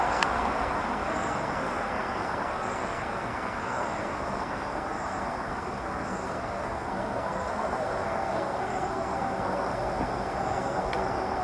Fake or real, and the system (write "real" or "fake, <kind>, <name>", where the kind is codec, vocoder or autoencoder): fake, codec, SNAC